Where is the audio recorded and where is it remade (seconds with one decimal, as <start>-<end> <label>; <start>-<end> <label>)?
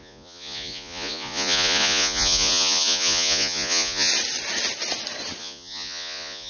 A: 0.0-4.1 remade; 4.1-5.4 recorded; 5.4-6.5 remade